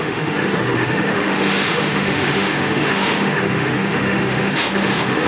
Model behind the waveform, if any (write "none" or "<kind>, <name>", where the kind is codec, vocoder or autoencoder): autoencoder, DAC-VAE